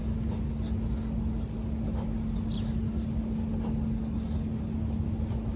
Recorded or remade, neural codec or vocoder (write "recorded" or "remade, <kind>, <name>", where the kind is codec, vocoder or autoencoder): recorded